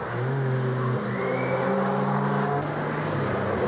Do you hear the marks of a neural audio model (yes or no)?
no